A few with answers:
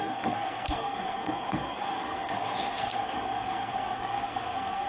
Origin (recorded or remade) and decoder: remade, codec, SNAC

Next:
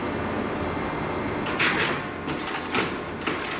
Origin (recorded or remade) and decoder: recorded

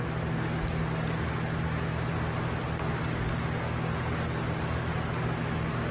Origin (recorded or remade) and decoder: recorded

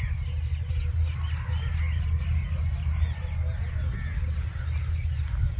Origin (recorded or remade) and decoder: recorded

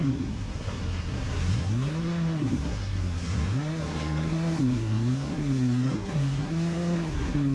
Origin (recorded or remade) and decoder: remade, codec, SNAC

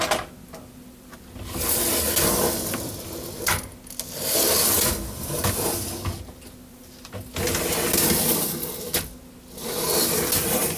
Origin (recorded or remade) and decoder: recorded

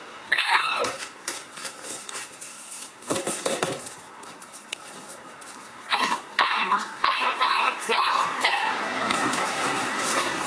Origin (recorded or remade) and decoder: remade, codec, SNAC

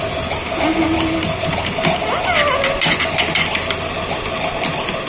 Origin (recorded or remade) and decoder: recorded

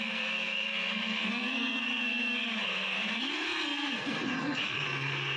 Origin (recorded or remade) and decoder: remade, codec, SNAC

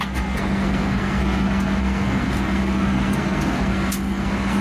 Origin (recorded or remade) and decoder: remade, codec, SNAC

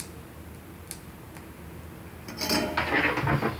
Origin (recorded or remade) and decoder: recorded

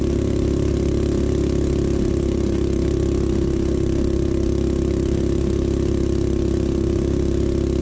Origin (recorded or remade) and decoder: recorded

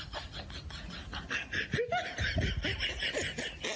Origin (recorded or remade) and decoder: recorded